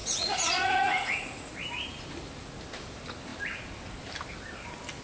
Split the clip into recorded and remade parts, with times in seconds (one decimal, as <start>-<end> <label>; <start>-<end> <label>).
0.0-1.5 remade; 1.5-5.0 recorded